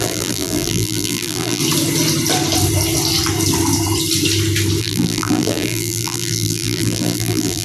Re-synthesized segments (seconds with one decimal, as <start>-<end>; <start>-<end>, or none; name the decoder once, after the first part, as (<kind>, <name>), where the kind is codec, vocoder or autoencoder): 0.0-1.6 (vocoder, BigVGAN v2); 4.8-7.6